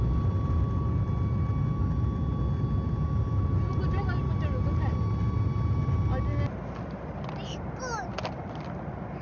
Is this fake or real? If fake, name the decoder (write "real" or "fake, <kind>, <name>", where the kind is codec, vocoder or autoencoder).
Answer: real